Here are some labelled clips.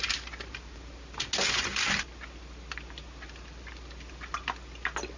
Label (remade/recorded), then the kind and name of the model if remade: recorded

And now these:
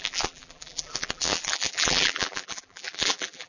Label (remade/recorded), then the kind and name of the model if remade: remade, vocoder, BigVGAN v2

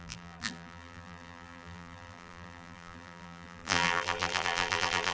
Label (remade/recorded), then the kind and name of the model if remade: remade, vocoder, BigVGAN v2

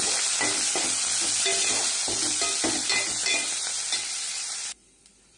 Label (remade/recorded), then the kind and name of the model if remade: recorded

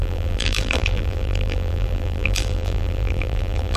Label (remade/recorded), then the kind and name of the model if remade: remade, vocoder, BigVGAN v2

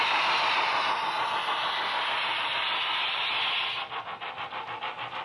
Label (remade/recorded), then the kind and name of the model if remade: recorded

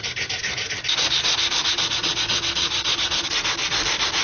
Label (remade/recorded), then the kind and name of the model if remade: remade, vocoder, BigVGAN v2